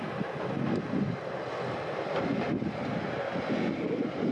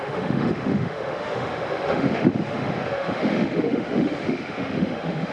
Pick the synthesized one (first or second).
second